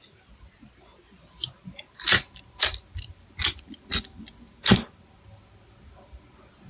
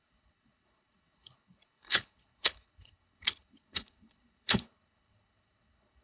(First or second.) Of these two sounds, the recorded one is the first